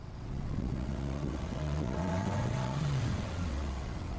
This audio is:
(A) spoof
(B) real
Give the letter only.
A